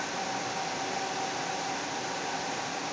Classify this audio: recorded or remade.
recorded